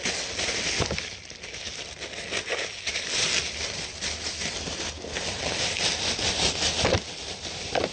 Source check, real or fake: real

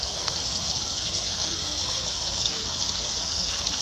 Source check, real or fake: fake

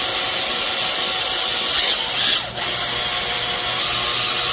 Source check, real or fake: real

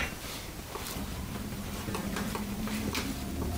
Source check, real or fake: fake